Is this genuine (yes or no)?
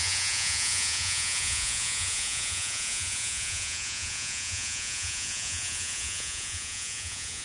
no